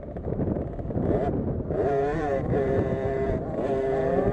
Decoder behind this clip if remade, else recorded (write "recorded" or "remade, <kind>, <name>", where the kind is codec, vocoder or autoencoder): remade, vocoder, BigVGAN v2